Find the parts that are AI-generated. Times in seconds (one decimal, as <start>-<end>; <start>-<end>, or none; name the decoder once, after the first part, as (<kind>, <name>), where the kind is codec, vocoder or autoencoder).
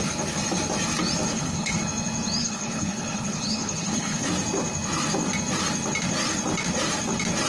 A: 1.3-1.8 (codec, HILCodec); 2.4-4.3